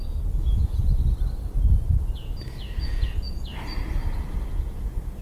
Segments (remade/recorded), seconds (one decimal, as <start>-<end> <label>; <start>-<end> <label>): 0.0-0.8 remade; 0.8-2.8 recorded; 2.8-3.5 remade; 3.5-4.5 recorded; 4.5-5.2 remade